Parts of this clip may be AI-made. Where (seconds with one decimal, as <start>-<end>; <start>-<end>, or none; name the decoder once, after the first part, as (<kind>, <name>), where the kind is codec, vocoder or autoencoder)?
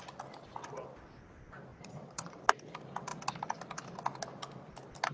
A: 1.7-2.4 (vocoder, Vocos)